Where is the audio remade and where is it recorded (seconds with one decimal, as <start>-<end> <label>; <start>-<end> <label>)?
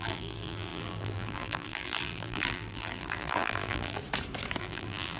0.0-4.0 remade; 4.0-4.6 recorded; 4.6-5.2 remade